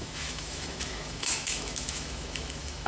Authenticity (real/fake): fake